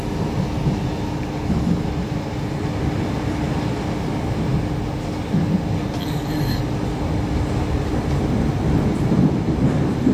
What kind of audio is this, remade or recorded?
recorded